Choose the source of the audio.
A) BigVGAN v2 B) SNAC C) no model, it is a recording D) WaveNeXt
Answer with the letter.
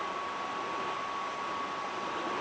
C